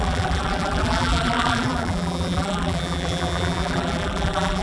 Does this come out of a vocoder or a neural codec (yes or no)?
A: yes